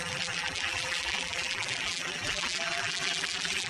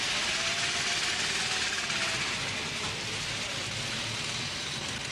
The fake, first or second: first